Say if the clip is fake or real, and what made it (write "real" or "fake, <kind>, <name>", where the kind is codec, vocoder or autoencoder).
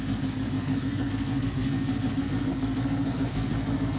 fake, codec, SNAC